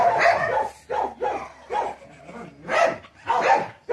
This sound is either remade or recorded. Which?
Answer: recorded